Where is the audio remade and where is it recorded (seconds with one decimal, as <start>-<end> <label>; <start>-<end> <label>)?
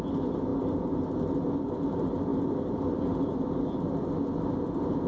0.0-5.1 recorded